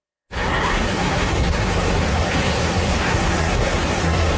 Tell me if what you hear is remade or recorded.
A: remade